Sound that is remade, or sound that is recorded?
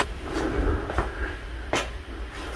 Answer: remade